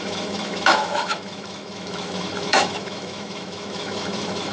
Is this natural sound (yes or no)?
no